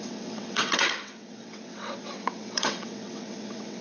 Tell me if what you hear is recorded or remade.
remade